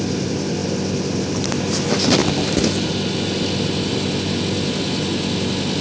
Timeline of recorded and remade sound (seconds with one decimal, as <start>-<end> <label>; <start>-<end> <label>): 0.0-5.8 recorded